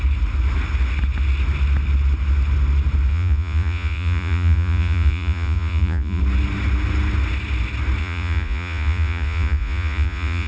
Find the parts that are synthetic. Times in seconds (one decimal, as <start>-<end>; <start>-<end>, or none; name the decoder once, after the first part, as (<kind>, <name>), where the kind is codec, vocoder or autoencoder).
3.1-6.2 (vocoder, Vocos); 8.0-10.5